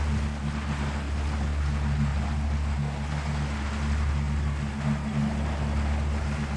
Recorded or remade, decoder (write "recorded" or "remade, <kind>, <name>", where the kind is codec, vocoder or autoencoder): recorded